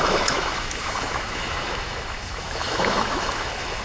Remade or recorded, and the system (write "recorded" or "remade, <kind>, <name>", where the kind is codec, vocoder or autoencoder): remade, autoencoder, DAC-VAE